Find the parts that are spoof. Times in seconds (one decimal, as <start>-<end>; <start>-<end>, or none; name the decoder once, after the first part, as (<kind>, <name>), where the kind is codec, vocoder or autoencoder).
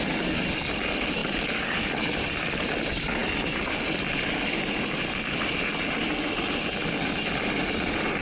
none